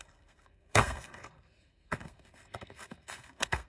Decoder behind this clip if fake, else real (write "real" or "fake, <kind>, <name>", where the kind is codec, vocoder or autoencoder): fake, codec, SNAC